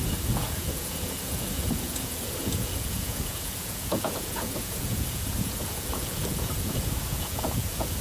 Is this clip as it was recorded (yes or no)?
no